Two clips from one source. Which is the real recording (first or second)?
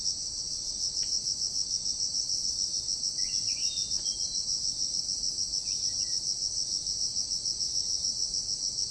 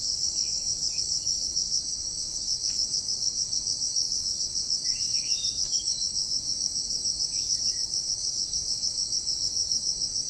first